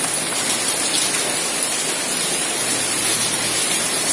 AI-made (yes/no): no